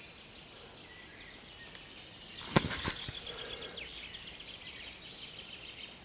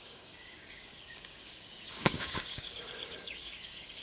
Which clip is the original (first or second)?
first